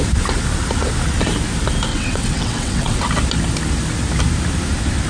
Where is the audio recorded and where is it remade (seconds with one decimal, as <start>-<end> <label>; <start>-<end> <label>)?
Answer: 0.0-1.9 recorded; 1.9-3.1 remade; 3.1-5.1 recorded